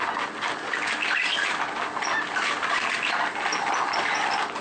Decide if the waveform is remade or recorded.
recorded